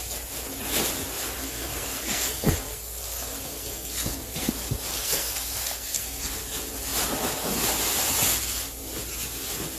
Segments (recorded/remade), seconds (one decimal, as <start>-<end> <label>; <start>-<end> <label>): 0.0-1.4 recorded; 1.4-4.5 remade; 4.5-4.9 recorded; 4.9-6.3 remade; 6.3-9.8 recorded